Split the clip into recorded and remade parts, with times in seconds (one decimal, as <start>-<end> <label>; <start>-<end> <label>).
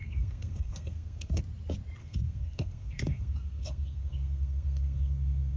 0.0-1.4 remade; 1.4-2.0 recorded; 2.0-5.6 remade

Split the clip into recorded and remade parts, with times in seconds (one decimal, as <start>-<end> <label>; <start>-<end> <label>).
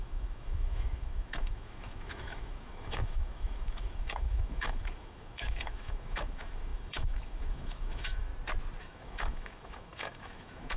0.0-8.3 remade; 8.3-8.8 recorded; 8.8-10.8 remade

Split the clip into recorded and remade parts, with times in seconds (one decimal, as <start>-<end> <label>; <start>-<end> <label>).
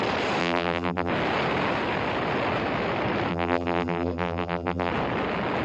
0.0-0.4 recorded; 0.4-1.1 remade; 1.1-3.3 recorded; 3.3-4.9 remade; 4.9-5.6 recorded